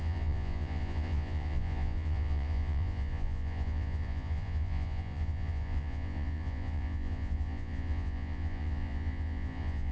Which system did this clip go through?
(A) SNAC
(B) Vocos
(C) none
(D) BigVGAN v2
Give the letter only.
B